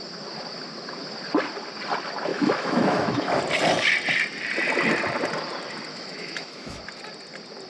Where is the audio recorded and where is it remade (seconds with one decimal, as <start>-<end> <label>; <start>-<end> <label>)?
0.0-2.3 recorded; 2.3-3.4 remade; 3.4-5.9 recorded; 5.9-6.8 remade; 6.8-7.7 recorded